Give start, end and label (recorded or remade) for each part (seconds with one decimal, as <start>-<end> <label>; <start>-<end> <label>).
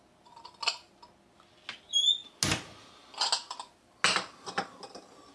0.0-5.3 recorded